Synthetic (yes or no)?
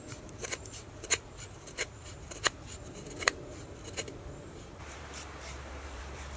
yes